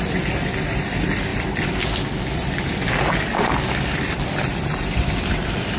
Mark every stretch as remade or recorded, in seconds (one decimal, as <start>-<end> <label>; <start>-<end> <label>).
0.0-5.8 remade